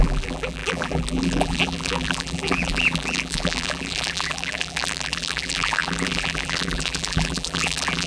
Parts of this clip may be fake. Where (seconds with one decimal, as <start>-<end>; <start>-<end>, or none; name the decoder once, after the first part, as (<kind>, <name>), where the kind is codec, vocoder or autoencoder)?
0.0-8.1 (vocoder, BigVGAN v2)

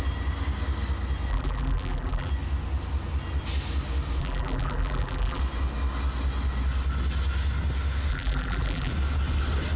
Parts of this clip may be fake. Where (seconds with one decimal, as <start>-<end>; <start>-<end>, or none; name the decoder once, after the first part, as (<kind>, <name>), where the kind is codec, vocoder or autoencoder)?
1.3-2.3 (vocoder, BigVGAN v2); 4.2-5.4; 8.1-8.9

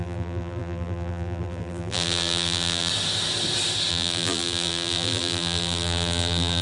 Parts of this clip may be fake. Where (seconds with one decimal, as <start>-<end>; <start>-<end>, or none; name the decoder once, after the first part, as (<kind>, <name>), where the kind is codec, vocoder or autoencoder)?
0.0-2.9 (vocoder, BigVGAN v2); 3.9-6.6

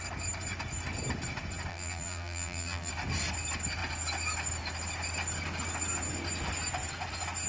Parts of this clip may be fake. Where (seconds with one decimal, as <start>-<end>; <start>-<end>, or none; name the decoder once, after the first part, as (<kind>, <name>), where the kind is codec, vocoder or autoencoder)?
1.7-2.9 (vocoder, BigVGAN v2)

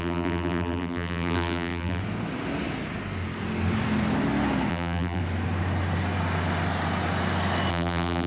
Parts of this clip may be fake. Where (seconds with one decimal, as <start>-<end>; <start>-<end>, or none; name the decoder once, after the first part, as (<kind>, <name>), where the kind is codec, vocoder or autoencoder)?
0.0-2.0 (vocoder, BigVGAN v2); 4.7-5.2; 7.7-8.3

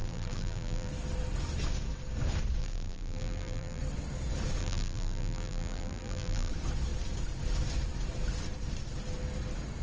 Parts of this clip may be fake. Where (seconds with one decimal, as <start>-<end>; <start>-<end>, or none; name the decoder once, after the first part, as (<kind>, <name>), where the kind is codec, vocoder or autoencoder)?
0.0-0.9 (vocoder, BigVGAN v2); 2.6-3.8; 4.6-6.5

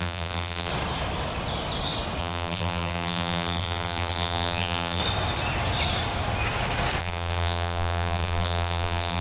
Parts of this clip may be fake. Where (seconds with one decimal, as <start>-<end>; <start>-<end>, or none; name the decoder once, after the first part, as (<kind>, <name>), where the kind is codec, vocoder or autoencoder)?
0.0-0.7 (vocoder, BigVGAN v2); 2.2-5.0; 7.0-9.2

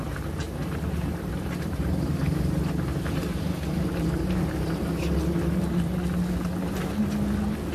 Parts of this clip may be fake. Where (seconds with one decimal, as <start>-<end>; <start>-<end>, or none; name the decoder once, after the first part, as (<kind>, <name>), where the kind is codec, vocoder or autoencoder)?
0.4-5.0 (vocoder, BigVGAN v2)